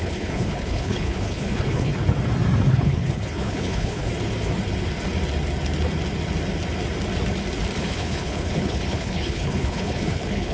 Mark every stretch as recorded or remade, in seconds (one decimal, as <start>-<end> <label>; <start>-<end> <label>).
0.0-1.9 remade; 1.9-2.7 recorded; 2.7-4.1 remade; 4.1-7.8 recorded; 7.8-10.5 remade